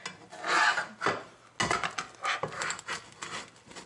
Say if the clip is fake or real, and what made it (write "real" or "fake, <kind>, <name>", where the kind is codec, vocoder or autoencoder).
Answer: real